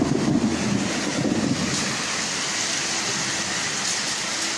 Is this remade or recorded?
recorded